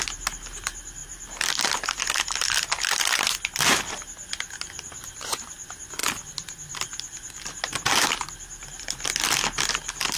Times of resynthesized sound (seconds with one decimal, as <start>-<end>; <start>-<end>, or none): none